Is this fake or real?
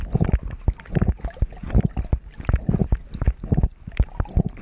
real